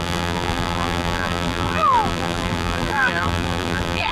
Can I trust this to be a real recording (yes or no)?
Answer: no